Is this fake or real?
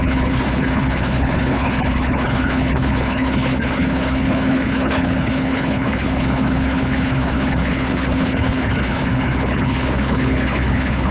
fake